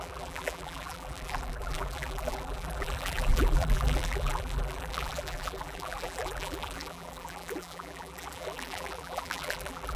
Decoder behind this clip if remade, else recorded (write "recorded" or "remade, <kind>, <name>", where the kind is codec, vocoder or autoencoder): remade, vocoder, BigVGAN v2